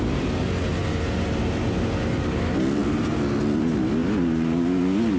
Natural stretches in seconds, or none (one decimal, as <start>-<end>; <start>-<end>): 0.0-5.2